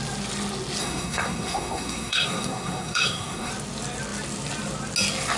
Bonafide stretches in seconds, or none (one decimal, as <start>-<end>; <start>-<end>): 0.0-0.8; 3.5-5.4